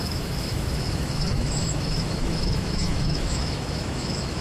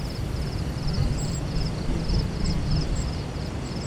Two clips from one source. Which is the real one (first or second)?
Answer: second